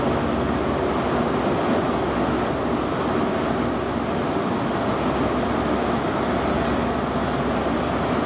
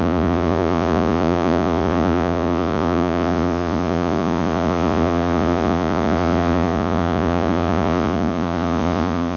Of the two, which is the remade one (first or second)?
second